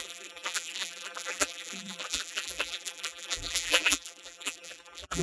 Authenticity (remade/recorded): remade